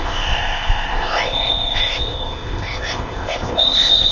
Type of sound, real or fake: fake